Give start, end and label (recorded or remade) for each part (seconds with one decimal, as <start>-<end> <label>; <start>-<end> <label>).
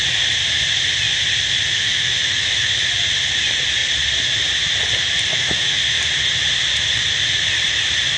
0.0-1.7 recorded; 1.7-2.7 remade; 2.7-5.3 recorded; 5.3-5.8 remade; 5.8-8.2 recorded